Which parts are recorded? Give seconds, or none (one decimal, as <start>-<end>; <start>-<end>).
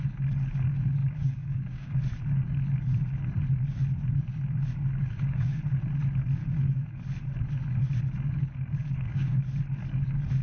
0.0-1.0; 2.0-5.0; 5.8-6.4; 7.0-8.8; 9.4-10.4